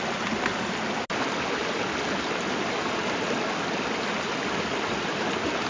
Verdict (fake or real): real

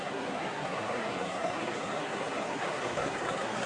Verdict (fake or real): fake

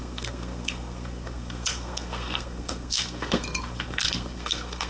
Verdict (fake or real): fake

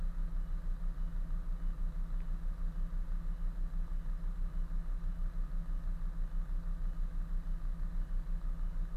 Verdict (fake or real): real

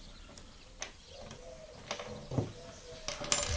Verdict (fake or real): real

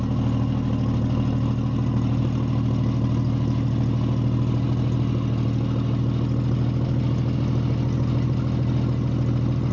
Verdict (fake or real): real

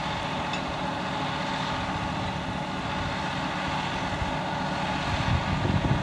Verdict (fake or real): real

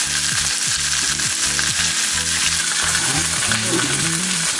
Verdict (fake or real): real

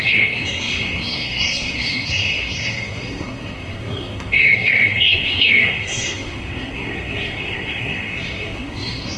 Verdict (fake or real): fake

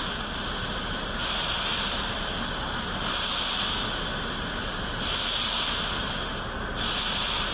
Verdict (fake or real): real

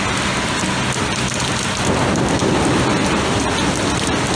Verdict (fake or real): real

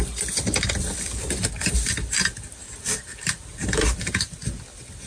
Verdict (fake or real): real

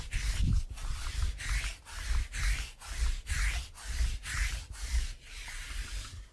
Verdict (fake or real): real